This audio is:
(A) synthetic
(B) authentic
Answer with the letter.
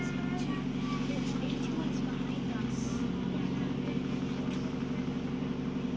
B